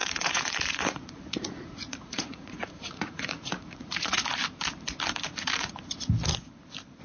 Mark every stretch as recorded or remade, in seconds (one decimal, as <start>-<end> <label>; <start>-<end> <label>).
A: 0.0-4.2 remade; 4.2-7.0 recorded